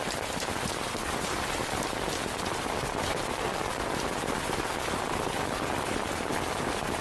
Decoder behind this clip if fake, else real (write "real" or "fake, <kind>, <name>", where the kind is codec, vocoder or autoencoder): real